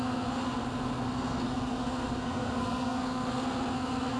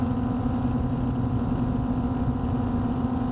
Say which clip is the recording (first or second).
second